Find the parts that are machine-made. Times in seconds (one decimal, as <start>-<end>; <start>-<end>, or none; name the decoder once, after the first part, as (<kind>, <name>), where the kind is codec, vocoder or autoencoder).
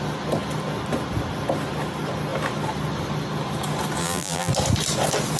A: 4.0-4.5 (vocoder, BigVGAN v2)